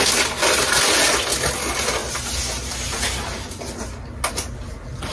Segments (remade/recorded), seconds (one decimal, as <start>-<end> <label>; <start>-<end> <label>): 0.0-5.1 recorded

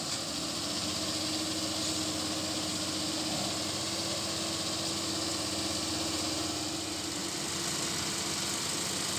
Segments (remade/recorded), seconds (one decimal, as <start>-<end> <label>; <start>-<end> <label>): 0.0-9.2 recorded

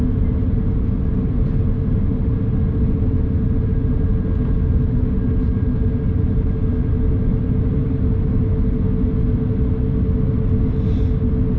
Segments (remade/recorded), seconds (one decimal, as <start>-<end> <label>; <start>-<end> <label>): 0.0-7.3 recorded; 7.3-8.1 remade; 8.1-11.6 recorded

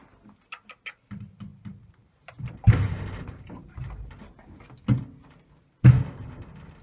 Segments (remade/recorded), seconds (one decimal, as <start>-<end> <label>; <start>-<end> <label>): 0.0-1.5 recorded; 1.5-4.1 remade; 4.1-6.8 recorded

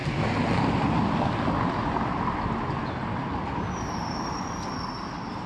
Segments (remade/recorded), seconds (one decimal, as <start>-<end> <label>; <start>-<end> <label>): 0.0-5.5 recorded

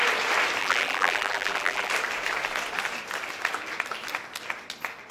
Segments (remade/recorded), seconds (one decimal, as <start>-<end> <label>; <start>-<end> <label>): 0.0-0.6 recorded; 0.6-1.9 remade; 1.9-5.1 recorded

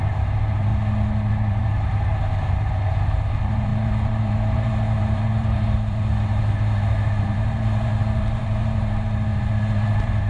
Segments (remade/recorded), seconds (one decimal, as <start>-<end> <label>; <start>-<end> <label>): 0.0-0.7 remade; 0.7-1.3 recorded; 1.3-10.3 remade

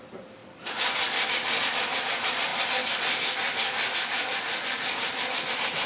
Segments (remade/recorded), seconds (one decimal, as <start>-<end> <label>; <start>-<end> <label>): 0.0-0.4 remade; 0.4-1.6 recorded; 1.6-2.5 remade; 2.5-5.5 recorded; 5.5-5.9 remade